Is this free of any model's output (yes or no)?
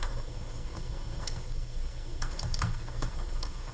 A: no